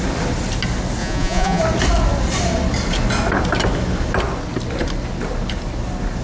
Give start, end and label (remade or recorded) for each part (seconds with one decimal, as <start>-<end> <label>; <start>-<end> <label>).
0.0-1.0 recorded; 1.0-1.6 remade; 1.6-6.2 recorded